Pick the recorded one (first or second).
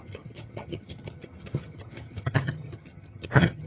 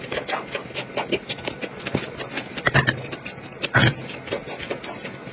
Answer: second